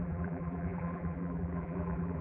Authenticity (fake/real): fake